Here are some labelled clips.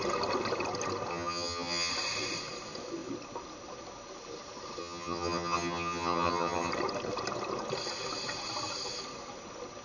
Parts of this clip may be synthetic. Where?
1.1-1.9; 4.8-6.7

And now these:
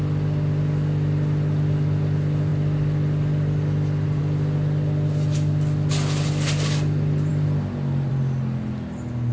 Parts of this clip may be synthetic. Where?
none

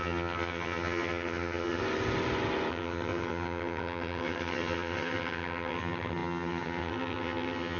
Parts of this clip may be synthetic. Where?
0.0-1.8; 2.7-7.8

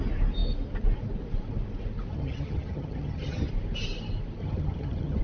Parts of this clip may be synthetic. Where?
2.1-3.5; 4.4-5.2

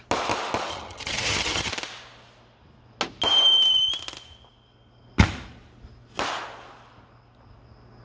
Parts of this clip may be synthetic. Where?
0.7-1.7

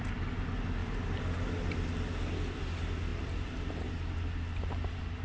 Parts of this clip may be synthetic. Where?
none

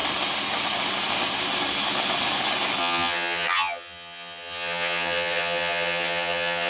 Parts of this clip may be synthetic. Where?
2.8-6.7

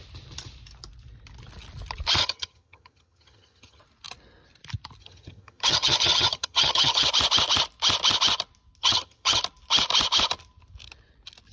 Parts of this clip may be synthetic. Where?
2.2-3.8; 5.0-7.1; 8.8-9.4